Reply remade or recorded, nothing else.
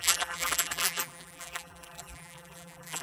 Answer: remade